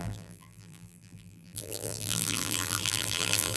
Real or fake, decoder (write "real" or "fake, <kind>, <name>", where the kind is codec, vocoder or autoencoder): fake, vocoder, BigVGAN v2